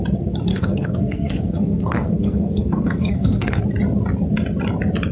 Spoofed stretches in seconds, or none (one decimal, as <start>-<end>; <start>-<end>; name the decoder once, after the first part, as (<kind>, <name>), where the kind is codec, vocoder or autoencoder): 0.5-3.6 (codec, SNAC)